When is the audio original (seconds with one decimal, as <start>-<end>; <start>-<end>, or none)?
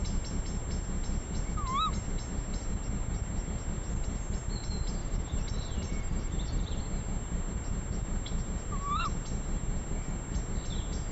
0.0-5.0; 6.8-11.1